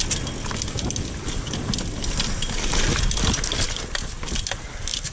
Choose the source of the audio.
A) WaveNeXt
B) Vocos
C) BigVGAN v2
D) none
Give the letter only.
D